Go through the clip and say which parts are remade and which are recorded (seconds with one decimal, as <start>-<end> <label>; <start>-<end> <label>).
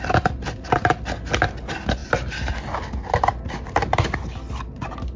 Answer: 0.0-5.2 recorded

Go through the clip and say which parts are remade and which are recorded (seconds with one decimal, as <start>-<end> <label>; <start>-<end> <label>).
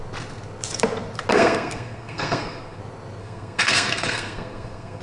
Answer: 0.0-1.3 recorded; 1.3-2.8 remade; 2.8-3.2 recorded; 3.2-5.0 remade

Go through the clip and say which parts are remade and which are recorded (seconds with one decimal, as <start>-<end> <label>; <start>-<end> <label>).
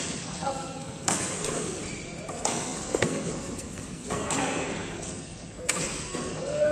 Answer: 0.0-1.8 remade; 1.8-2.3 recorded; 2.3-6.7 remade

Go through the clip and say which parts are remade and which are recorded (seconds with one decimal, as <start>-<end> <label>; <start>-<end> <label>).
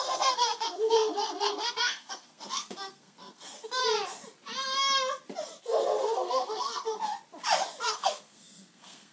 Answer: 0.0-3.8 remade; 3.8-5.6 recorded; 5.6-7.0 remade; 7.0-7.8 recorded; 7.8-9.1 remade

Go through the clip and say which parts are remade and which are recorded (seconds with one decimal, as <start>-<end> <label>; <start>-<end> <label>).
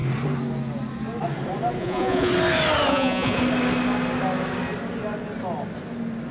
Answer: 0.0-1.8 recorded; 1.8-2.3 remade; 2.3-2.9 recorded; 2.9-3.4 remade; 3.4-6.3 recorded